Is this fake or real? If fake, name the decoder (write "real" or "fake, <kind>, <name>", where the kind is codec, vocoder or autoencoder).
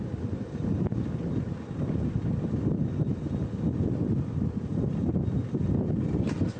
real